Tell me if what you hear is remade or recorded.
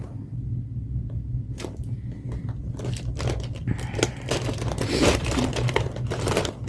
remade